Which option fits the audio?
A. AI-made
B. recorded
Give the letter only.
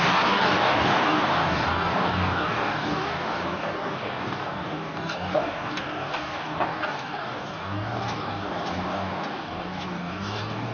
A